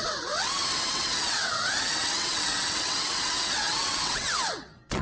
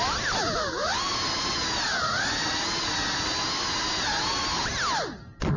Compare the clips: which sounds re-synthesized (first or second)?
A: first